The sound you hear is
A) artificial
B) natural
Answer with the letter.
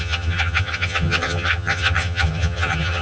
A